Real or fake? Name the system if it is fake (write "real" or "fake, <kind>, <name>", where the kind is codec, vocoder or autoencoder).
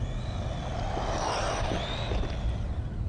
real